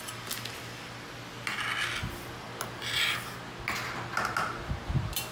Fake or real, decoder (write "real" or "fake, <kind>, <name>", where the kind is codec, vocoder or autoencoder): real